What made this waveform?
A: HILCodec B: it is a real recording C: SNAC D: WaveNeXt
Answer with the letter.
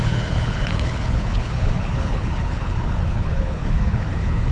A